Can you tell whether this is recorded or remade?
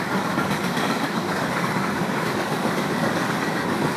remade